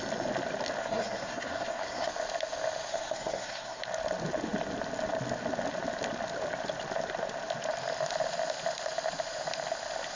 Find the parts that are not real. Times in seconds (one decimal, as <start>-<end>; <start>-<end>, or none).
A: 0.8-2.1; 2.9-3.8